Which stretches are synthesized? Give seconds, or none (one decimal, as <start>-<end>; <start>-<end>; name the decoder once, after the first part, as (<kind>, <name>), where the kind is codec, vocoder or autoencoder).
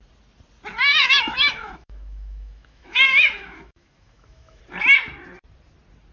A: 0.9-4.6 (autoencoder, DAC-VAE)